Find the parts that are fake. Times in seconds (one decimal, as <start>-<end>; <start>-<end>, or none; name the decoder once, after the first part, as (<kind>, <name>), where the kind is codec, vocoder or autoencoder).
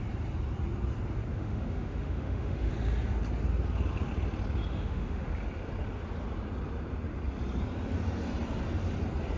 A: 1.3-2.7 (autoencoder, DAC-VAE); 4.7-5.3